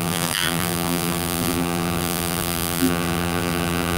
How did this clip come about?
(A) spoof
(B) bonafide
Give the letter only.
A